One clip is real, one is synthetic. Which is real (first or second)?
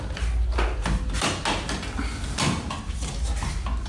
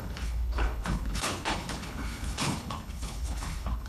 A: first